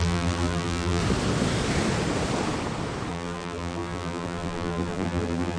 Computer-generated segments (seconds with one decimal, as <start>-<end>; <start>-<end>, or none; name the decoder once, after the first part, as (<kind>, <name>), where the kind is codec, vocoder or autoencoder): 0.0-1.0 (vocoder, BigVGAN v2); 3.1-5.6

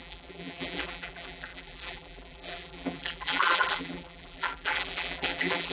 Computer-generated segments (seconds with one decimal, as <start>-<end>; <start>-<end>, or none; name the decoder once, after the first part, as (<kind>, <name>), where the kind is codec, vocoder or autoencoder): 0.0-5.7 (vocoder, BigVGAN v2)